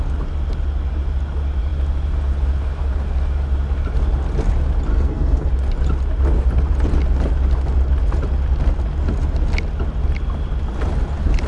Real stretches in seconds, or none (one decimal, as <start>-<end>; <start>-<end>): 0.0-4.9; 5.5-11.5